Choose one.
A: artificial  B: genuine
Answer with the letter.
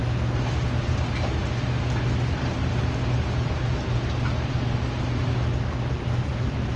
B